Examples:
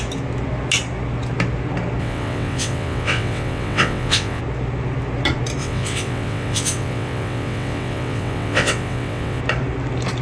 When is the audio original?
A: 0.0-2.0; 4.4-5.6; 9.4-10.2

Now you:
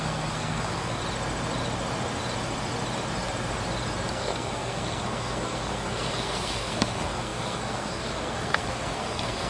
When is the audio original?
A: 1.0-4.1

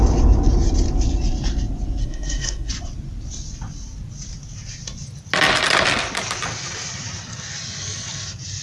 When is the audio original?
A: 0.0-2.0; 2.7-8.6

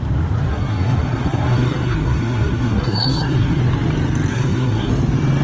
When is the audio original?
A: 0.0-0.5; 3.6-4.3; 4.9-5.4

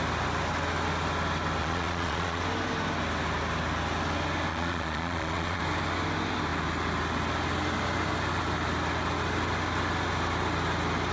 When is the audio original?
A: 0.0-1.6; 2.4-4.5; 5.6-11.1

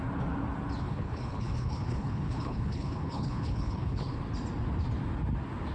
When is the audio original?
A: 0.0-0.8; 4.2-5.7

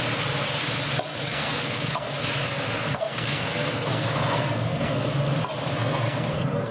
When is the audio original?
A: 0.0-1.1; 5.1-5.8